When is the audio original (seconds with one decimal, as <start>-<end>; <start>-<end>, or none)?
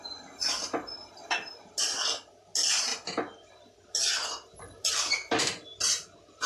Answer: 0.0-6.5